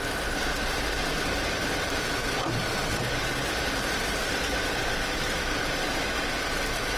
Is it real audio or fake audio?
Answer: real